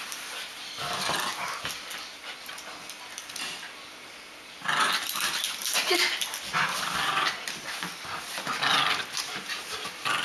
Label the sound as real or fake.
real